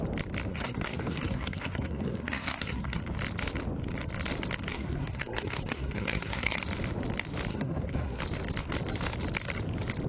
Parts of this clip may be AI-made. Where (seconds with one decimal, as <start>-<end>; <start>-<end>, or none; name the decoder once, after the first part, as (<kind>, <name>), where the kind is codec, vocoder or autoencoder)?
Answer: 0.5-3.0 (codec, SNAC); 4.7-6.6; 7.5-8.2